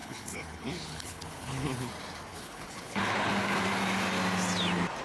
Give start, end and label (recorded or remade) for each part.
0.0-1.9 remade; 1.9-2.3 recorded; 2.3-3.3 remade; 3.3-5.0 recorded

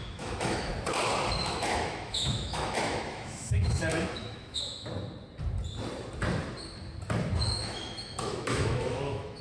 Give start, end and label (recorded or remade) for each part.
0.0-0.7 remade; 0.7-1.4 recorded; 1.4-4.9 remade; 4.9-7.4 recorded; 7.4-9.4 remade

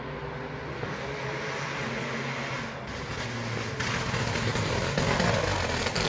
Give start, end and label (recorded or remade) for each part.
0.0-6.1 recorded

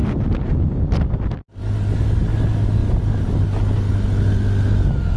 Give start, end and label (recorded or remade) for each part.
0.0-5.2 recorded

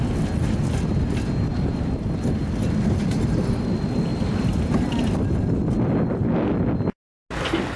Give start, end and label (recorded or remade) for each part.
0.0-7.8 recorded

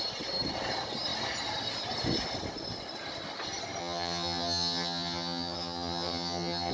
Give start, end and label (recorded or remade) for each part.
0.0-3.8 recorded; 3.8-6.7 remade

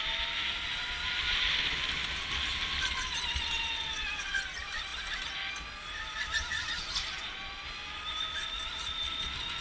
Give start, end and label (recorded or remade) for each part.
0.0-9.6 recorded